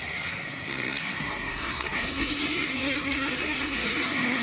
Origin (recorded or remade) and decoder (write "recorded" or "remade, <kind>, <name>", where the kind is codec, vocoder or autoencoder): remade, codec, SNAC